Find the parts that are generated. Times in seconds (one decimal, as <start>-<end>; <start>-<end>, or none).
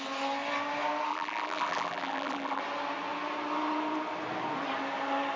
1.1-2.6